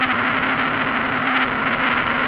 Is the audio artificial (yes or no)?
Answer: no